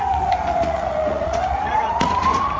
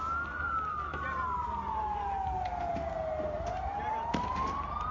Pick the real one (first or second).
second